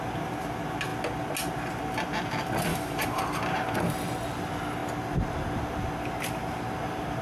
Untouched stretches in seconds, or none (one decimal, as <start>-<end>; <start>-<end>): 0.0-2.7; 3.2-7.2

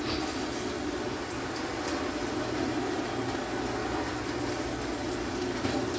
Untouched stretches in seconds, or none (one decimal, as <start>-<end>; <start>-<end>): 0.0-6.0

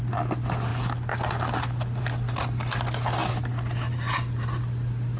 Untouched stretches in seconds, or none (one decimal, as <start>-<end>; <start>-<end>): 0.0-5.2

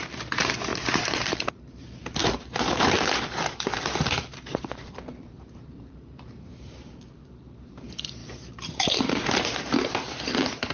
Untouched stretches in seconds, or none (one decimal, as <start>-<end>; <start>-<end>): none

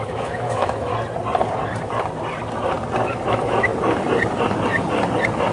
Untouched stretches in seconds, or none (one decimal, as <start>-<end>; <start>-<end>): 0.9-3.3; 3.7-5.5

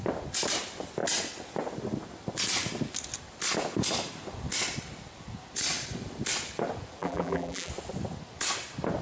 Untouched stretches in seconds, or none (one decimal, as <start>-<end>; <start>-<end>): 0.0-7.0; 7.7-9.0